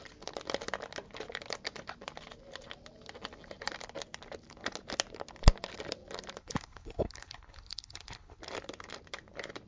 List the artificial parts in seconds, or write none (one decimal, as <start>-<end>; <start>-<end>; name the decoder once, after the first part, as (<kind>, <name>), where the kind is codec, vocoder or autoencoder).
6.4-8.4 (codec, HILCodec)